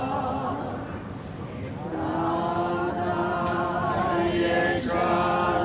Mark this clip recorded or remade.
recorded